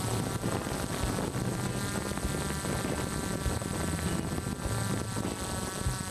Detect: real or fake real